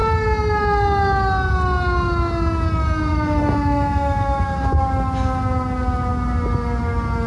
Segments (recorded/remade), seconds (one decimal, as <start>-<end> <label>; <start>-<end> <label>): 0.0-3.1 recorded; 3.1-4.8 remade; 4.8-7.3 recorded